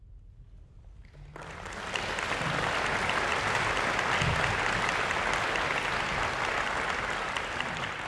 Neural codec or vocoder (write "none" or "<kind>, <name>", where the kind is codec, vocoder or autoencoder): none